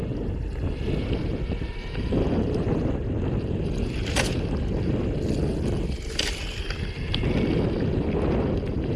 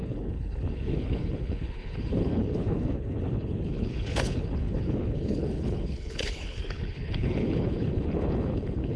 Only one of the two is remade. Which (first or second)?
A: second